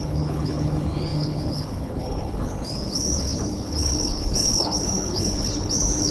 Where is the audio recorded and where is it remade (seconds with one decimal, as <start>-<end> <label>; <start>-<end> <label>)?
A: 0.0-6.1 remade